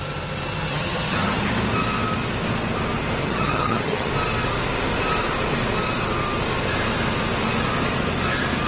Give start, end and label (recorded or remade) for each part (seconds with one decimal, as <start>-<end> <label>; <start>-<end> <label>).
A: 0.0-0.7 recorded; 0.7-1.5 remade; 1.5-3.2 recorded; 3.2-4.1 remade; 4.1-8.7 recorded